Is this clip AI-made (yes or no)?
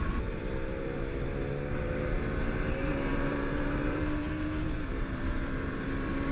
yes